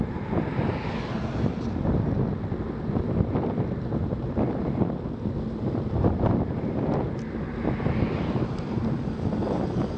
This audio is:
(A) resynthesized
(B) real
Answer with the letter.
B